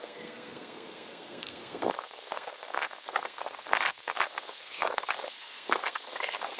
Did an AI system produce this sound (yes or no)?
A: yes